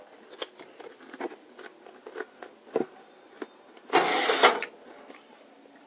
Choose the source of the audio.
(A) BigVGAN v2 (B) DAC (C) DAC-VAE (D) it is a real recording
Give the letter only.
D